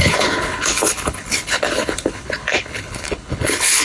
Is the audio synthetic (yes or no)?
yes